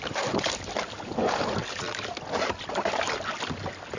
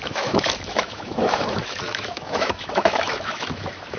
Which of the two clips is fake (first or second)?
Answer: second